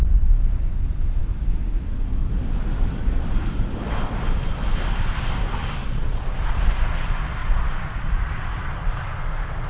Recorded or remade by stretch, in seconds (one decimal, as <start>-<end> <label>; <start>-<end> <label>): 0.0-5.8 recorded; 5.8-6.6 remade; 6.6-7.4 recorded; 7.4-8.1 remade; 8.1-9.7 recorded